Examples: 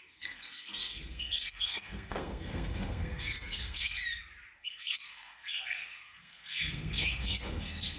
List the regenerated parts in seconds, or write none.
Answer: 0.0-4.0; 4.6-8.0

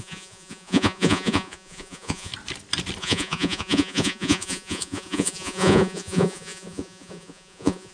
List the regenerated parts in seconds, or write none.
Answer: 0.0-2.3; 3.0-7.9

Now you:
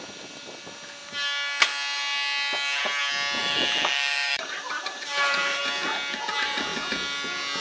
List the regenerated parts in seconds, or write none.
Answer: 3.4-5.6

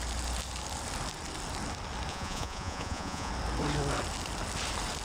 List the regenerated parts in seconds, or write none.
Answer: 2.1-3.3

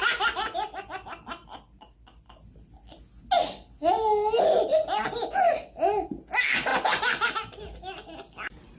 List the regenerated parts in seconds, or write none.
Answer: none